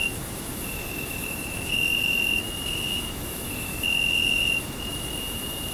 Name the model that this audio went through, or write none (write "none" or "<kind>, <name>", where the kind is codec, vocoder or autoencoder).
autoencoder, DAC-VAE